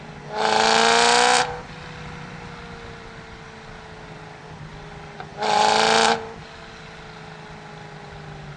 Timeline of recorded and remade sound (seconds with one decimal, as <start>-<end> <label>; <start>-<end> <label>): 0.0-8.6 recorded